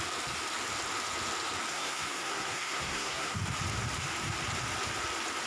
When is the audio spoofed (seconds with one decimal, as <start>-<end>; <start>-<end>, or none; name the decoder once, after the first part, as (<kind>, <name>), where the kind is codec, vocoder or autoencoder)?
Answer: 1.7-3.4 (codec, SNAC)